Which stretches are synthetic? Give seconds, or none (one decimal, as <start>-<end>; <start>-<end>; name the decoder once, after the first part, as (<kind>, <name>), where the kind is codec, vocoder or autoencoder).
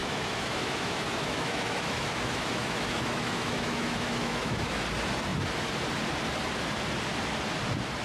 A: 0.0-4.8 (autoencoder, DAC-VAE)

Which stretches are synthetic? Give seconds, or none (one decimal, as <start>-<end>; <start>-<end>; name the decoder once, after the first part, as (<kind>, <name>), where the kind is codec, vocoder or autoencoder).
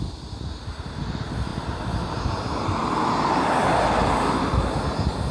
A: none